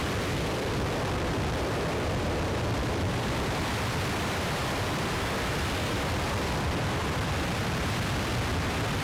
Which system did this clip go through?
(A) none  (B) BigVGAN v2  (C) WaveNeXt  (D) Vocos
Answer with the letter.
B